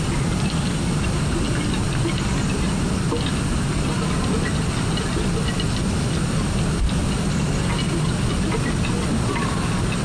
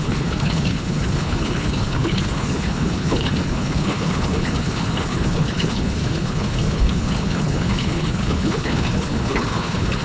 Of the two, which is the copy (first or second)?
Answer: second